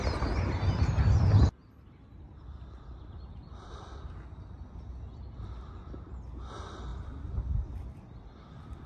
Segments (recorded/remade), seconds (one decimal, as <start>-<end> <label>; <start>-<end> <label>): 0.0-1.6 recorded; 1.6-4.0 remade; 4.0-6.9 recorded; 6.9-7.7 remade; 7.7-8.9 recorded